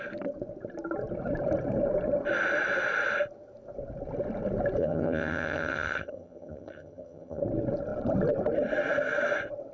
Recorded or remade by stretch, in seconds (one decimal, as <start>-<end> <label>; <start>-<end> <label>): 0.0-4.8 recorded; 4.8-7.4 remade; 7.4-9.7 recorded